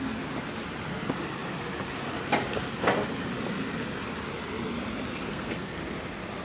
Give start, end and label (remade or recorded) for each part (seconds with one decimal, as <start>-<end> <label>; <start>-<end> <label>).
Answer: 0.0-5.1 recorded; 5.1-5.7 remade; 5.7-6.4 recorded